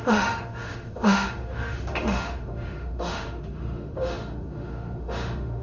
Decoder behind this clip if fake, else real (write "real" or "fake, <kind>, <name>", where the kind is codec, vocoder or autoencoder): fake, autoencoder, DAC-VAE